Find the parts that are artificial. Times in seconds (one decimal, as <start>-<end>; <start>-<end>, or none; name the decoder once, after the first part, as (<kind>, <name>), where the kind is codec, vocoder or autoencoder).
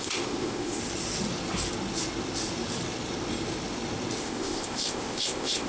0.0-0.8 (codec, ZipCodec); 4.2-5.7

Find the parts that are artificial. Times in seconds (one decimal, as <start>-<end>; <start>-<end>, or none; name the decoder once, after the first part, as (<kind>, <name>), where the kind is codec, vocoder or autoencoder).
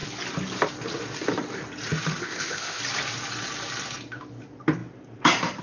2.2-2.8 (codec, ZipCodec)